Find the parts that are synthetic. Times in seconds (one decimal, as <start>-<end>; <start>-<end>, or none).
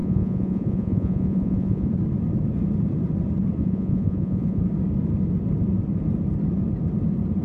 0.0-1.9; 3.6-4.6